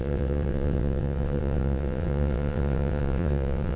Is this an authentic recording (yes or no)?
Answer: no